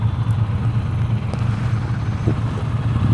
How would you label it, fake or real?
real